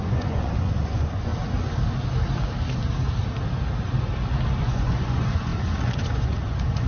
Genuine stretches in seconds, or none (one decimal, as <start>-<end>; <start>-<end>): 1.3-4.6